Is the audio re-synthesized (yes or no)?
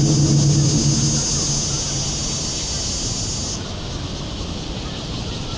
no